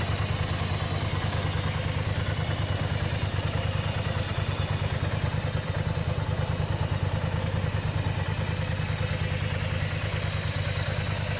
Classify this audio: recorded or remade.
recorded